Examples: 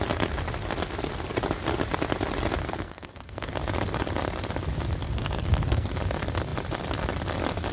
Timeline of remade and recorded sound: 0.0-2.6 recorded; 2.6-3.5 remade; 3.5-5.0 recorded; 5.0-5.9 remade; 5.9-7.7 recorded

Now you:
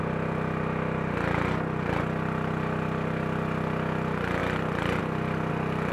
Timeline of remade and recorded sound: 0.0-5.9 recorded

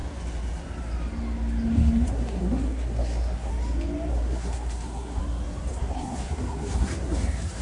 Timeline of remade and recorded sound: 0.0-2.1 recorded; 2.1-3.5 remade; 3.5-4.1 recorded; 4.1-5.2 remade; 5.2-5.7 recorded; 5.7-7.6 remade

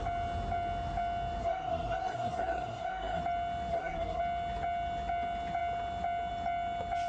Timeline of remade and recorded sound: 0.0-1.4 recorded; 1.4-3.2 remade; 3.2-3.7 recorded; 3.7-4.2 remade; 4.2-7.1 recorded

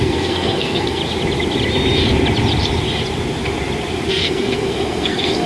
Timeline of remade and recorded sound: 0.0-1.0 remade; 1.0-4.1 recorded; 4.1-5.5 remade

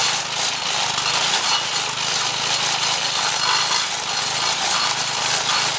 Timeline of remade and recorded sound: 0.0-5.8 recorded

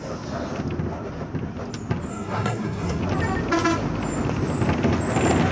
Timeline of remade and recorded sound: 0.0-2.1 recorded; 2.1-3.0 remade; 3.0-5.5 recorded

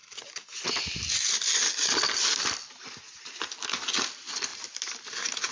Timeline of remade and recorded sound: 0.0-5.5 recorded